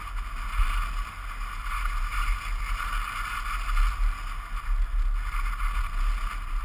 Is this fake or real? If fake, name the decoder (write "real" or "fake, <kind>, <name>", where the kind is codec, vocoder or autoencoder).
real